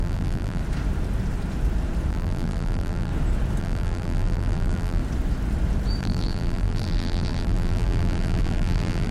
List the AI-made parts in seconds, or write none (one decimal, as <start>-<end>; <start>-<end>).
0.0-0.6; 2.1-3.1; 3.6-5.0; 6.0-9.1